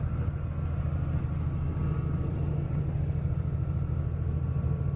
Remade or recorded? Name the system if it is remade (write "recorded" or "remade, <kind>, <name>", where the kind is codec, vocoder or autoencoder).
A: recorded